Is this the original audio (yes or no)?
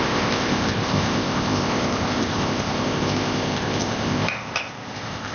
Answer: no